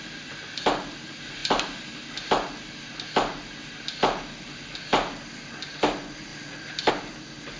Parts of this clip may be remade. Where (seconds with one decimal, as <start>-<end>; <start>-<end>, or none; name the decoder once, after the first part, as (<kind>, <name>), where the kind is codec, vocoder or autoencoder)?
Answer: none